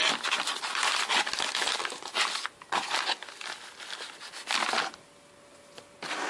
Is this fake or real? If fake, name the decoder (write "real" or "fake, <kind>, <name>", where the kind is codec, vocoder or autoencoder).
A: real